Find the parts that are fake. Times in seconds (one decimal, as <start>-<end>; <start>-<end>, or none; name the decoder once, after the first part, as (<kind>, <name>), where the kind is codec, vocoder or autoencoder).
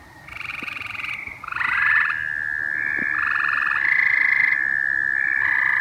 0.5-1.1 (vocoder, Vocos)